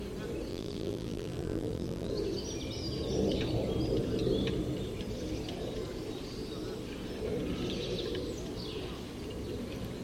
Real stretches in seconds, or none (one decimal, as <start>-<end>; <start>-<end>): 0.0-0.5; 2.1-10.0